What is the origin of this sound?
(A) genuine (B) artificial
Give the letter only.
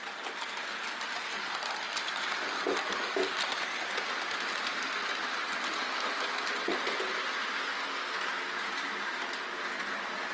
A